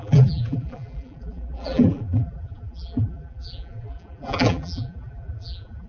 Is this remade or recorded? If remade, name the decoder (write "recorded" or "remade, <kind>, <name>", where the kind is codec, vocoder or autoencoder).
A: remade, vocoder, BigVGAN v2